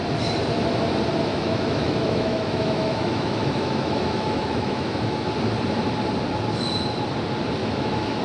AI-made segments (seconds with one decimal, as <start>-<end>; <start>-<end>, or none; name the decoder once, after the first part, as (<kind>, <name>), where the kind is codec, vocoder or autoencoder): 1.3-5.3 (autoencoder, DAC-VAE); 7.6-8.2